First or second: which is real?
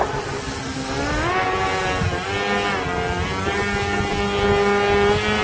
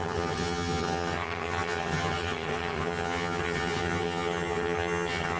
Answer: first